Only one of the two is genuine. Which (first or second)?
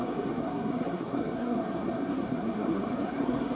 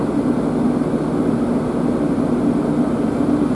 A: second